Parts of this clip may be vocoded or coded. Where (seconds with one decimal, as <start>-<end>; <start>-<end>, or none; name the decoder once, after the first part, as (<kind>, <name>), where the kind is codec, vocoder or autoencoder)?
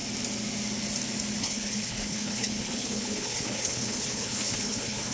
1.4-5.1 (codec, HILCodec)